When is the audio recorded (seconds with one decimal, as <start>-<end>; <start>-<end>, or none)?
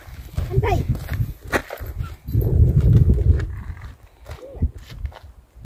0.0-1.6; 4.7-5.6